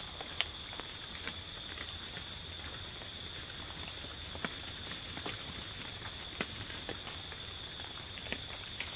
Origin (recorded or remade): recorded